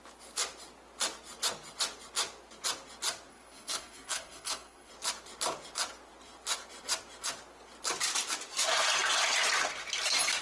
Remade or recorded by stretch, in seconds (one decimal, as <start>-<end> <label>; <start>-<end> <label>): 0.0-3.3 recorded; 3.3-4.9 remade; 4.9-10.4 recorded